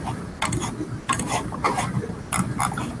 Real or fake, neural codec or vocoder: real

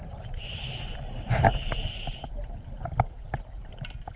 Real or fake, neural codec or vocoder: real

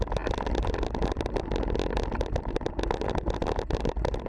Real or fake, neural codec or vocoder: real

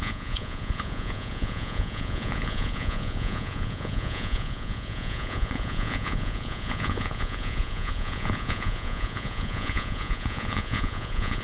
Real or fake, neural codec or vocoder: fake, vocoder, Vocos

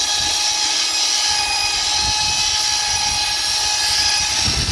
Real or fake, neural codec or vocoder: real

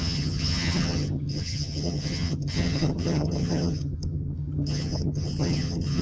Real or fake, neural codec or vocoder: fake, vocoder, HiFi-GAN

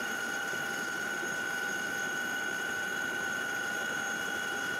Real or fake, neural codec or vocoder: fake, vocoder, BigVGAN v2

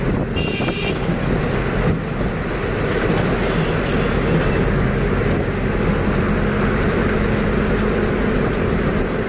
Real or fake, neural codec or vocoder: real